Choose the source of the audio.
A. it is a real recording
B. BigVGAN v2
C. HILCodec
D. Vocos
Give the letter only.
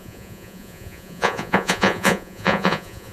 D